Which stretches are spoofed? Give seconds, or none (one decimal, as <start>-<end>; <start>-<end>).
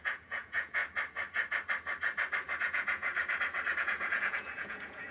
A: 0.0-0.8; 2.6-3.1; 3.8-5.1